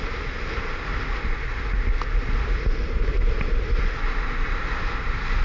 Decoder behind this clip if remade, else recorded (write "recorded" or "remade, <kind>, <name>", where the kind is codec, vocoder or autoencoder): recorded